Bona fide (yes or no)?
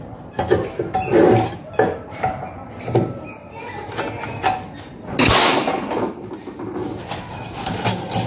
yes